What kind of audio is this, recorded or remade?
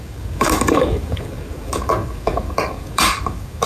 remade